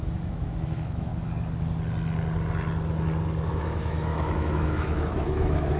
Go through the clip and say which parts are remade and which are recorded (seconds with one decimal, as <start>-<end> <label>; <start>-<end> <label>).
0.0-1.1 remade; 1.1-3.5 recorded; 3.5-5.8 remade